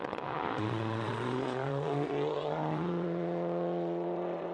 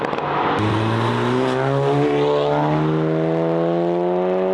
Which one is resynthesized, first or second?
first